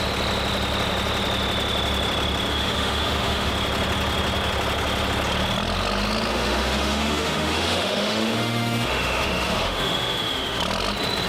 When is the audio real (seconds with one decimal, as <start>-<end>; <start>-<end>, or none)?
0.0-2.5; 3.5-6.3; 10.6-11.3